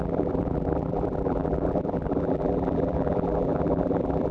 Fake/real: fake